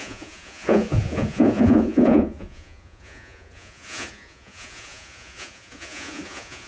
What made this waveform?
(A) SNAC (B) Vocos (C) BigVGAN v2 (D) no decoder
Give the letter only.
B